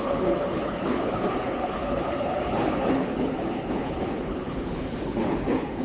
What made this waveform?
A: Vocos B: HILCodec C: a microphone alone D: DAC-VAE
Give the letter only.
B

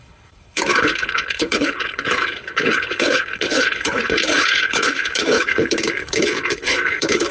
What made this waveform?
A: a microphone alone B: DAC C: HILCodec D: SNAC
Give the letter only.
C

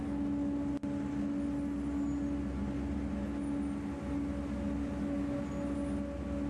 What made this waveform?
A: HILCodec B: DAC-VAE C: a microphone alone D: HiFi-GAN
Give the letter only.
C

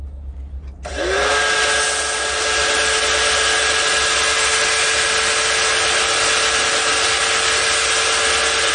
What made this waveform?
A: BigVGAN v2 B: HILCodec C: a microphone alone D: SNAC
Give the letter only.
C